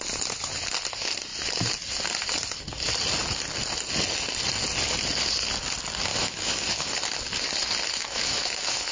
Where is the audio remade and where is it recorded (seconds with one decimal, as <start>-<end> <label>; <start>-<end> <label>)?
0.0-6.1 recorded; 6.1-6.9 remade; 6.9-8.0 recorded; 8.0-8.9 remade